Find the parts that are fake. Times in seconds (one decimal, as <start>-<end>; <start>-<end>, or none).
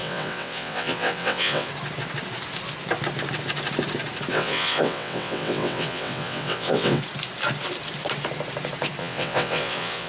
0.0-1.7; 4.3-7.0; 9.0-10.1